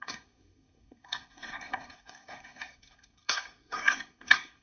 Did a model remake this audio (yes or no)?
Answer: yes